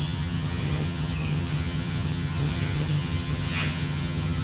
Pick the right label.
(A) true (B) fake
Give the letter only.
B